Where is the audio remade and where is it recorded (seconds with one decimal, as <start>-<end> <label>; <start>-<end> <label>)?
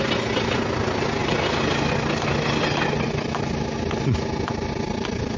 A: 0.0-5.4 recorded